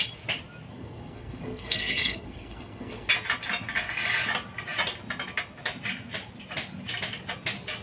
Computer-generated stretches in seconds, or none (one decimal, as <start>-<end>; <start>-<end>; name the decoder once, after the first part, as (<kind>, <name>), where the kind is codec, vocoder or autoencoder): 0.7-3.1 (codec, SNAC)